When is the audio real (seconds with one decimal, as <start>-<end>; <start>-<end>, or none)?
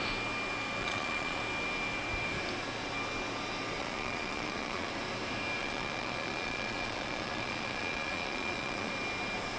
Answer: 0.0-0.8; 1.4-3.8; 4.9-5.6; 8.9-9.6